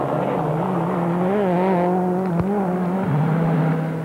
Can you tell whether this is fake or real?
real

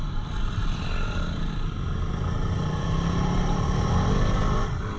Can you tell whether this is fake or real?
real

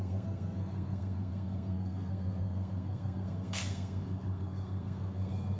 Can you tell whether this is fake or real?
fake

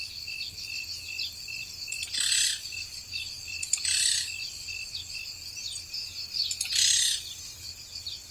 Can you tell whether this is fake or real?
real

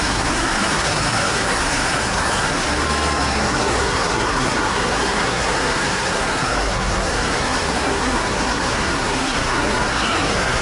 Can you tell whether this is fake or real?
fake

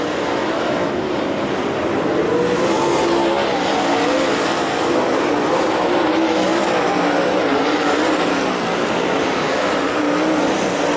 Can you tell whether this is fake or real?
real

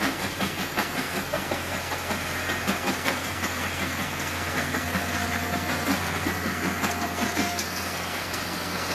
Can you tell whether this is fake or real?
fake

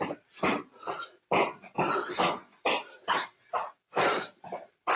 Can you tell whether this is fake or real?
real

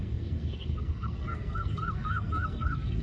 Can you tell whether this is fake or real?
fake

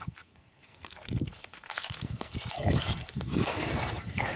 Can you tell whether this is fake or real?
fake